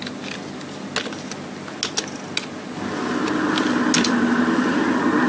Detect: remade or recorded recorded